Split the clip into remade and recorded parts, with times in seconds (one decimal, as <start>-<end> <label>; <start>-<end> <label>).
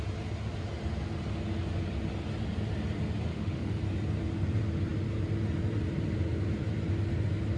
0.0-3.3 recorded; 3.3-3.8 remade; 3.8-7.6 recorded